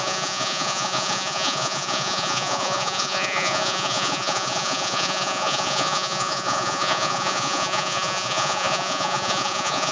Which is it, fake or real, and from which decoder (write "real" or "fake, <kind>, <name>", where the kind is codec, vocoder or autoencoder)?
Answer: fake, vocoder, Vocos